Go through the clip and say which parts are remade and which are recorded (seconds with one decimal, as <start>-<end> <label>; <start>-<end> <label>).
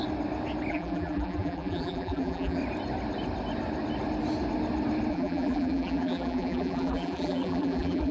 0.0-0.7 recorded; 0.7-2.6 remade; 2.6-5.1 recorded; 5.1-8.1 remade